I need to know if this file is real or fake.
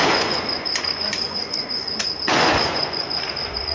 fake